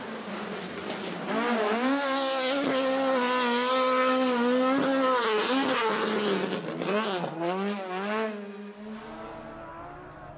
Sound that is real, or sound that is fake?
real